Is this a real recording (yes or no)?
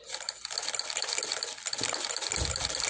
yes